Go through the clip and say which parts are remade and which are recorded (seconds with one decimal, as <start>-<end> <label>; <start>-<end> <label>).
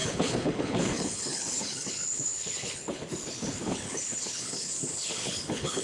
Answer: 0.0-5.8 remade